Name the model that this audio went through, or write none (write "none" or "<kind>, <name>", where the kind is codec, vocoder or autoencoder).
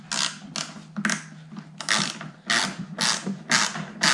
none